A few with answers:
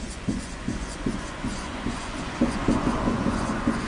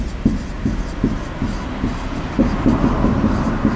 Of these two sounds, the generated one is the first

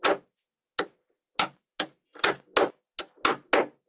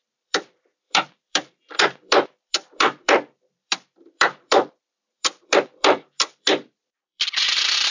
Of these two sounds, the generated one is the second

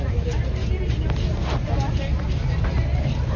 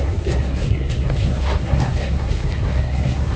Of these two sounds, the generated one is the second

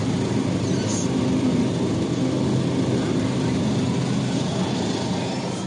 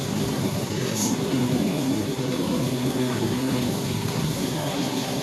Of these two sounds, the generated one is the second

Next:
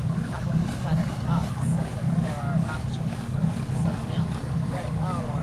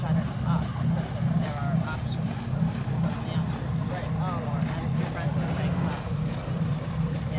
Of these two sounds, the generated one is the first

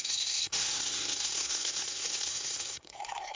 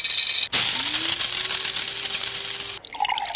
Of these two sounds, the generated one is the first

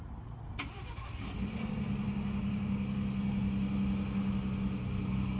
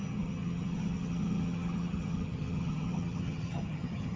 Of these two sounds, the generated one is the second